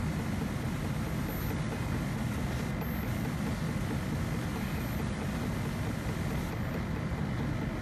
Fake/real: real